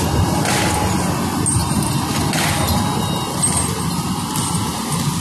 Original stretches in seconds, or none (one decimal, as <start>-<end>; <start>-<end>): 0.0-5.2